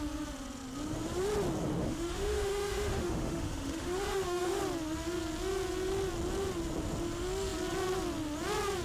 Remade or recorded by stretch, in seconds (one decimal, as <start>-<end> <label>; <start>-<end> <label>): 0.0-1.8 recorded; 1.8-4.6 remade; 4.6-8.8 recorded